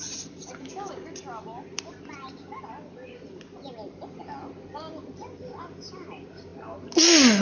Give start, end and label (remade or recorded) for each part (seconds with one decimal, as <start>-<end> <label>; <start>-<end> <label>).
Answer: 0.0-7.4 recorded